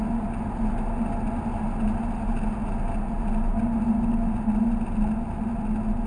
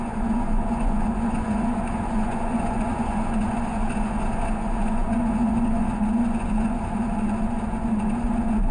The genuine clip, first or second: first